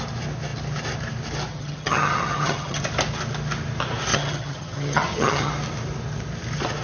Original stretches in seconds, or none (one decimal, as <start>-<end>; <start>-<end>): 0.0-1.5; 2.8-4.1; 5.5-6.8